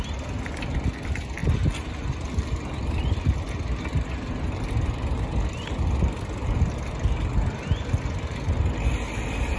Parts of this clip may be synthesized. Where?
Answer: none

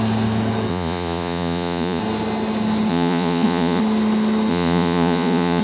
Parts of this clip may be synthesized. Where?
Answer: 0.7-2.0 (vocoder, Vocos); 2.9-3.8; 4.5-5.6